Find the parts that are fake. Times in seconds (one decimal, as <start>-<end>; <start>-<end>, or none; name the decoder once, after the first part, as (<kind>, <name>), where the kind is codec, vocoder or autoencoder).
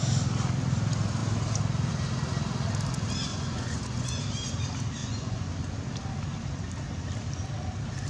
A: 3.3-4.2 (vocoder, Vocos); 5.0-5.5